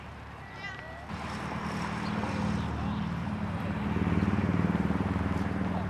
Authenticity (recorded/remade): recorded